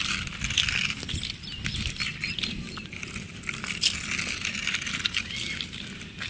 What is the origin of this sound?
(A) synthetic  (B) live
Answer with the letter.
B